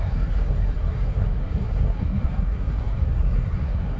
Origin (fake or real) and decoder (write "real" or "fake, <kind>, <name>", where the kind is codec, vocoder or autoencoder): fake, codec, SNAC